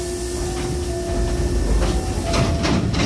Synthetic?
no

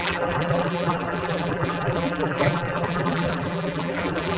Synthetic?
yes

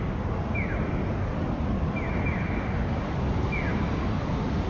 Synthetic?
no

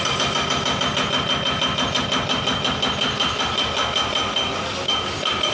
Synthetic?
no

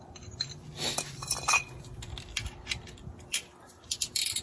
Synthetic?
yes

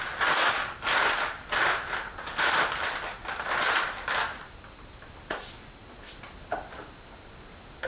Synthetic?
no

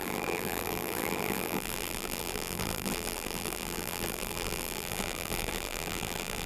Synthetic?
yes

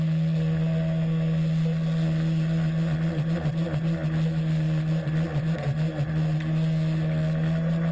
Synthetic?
no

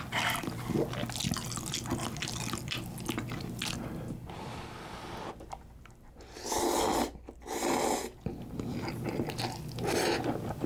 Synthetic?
no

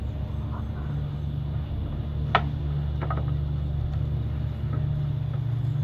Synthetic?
no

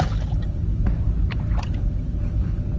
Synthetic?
yes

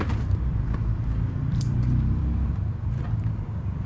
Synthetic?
yes